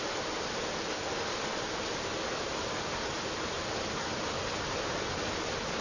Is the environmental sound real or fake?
real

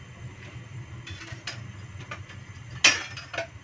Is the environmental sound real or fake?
real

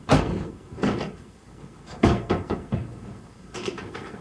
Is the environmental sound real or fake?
fake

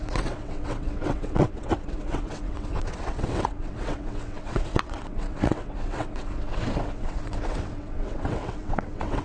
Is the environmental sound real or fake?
fake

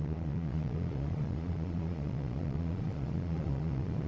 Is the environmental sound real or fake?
fake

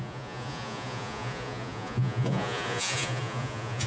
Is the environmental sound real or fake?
fake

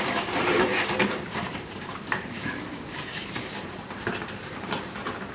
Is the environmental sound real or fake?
fake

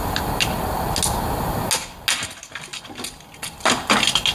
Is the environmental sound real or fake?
real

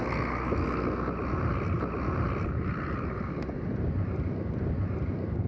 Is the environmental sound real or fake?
real